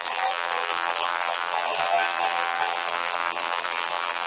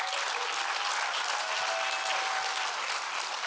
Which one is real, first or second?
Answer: second